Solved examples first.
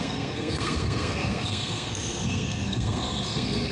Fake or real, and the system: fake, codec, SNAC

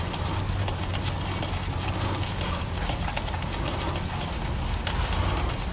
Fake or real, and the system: real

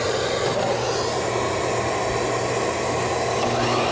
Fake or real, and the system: real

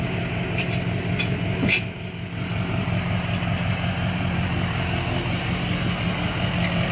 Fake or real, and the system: fake, vocoder, BigVGAN v2